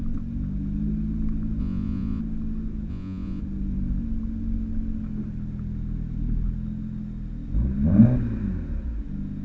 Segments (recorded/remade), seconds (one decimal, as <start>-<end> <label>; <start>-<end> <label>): 0.0-1.6 recorded; 1.6-2.2 remade; 2.2-2.9 recorded; 2.9-3.4 remade; 3.4-9.4 recorded